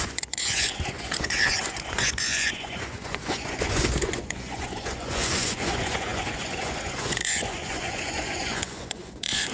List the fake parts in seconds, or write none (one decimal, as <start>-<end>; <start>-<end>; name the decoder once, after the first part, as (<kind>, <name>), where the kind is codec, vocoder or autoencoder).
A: 0.0-9.5 (vocoder, Vocos)

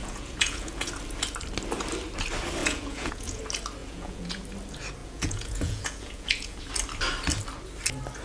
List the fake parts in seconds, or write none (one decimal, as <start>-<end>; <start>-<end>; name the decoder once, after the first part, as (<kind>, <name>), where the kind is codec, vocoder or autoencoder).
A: 0.0-0.9 (vocoder, Vocos); 2.6-3.4; 3.8-4.4; 5.0-6.6

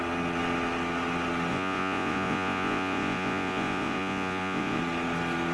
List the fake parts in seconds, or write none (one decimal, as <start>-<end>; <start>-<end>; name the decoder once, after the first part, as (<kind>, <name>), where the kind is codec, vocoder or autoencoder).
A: 1.5-4.8 (vocoder, Vocos)

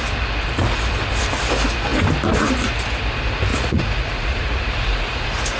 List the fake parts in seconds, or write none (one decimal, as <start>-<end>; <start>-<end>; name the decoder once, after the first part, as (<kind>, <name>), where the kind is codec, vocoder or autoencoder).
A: 3.5-5.6 (vocoder, Vocos)

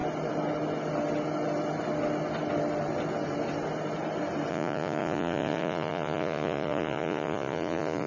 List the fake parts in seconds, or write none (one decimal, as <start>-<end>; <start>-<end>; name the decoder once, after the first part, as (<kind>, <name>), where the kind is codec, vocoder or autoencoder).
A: 4.5-8.1 (vocoder, Vocos)

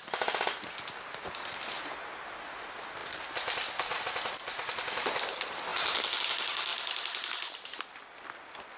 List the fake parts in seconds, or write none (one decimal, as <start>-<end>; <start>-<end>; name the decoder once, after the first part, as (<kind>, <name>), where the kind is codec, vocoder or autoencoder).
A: none

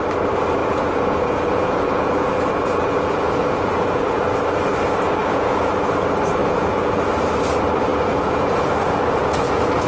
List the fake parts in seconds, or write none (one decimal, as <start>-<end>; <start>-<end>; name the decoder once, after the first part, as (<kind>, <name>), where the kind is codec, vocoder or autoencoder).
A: 0.6-4.2 (vocoder, Vocos); 5.2-5.7; 6.4-7.0; 7.9-9.9

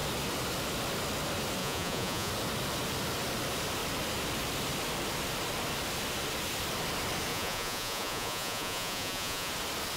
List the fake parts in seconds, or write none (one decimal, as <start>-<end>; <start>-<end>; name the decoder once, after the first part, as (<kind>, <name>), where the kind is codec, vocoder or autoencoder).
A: 1.6-2.3 (vocoder, Vocos); 7.3-9.5